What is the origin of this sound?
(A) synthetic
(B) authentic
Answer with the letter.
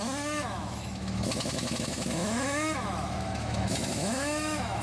A